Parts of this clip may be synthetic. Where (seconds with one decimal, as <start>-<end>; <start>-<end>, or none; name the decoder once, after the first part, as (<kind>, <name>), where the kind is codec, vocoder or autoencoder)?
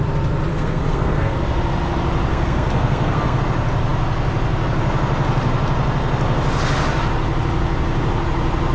0.5-1.4 (codec, SNAC); 2.3-3.4